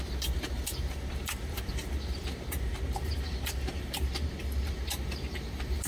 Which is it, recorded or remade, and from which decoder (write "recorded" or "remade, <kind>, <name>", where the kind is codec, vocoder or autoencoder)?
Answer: remade, vocoder, BigVGAN v2